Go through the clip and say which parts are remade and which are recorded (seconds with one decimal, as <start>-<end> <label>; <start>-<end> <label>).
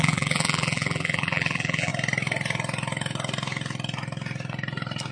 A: 0.0-1.9 remade; 1.9-5.1 recorded